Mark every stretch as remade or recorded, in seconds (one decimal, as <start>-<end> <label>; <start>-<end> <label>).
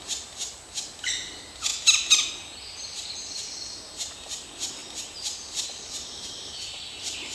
0.0-7.3 recorded